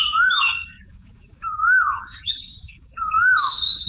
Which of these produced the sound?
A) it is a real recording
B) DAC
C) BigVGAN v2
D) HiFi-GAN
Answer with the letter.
B